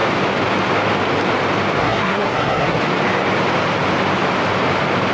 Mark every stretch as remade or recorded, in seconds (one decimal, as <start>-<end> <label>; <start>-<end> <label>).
0.0-1.8 recorded; 1.8-2.8 remade; 2.8-5.1 recorded